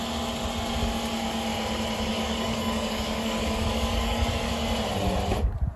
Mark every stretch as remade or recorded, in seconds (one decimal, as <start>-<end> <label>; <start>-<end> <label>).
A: 0.0-2.1 recorded; 2.1-4.5 remade; 4.5-5.8 recorded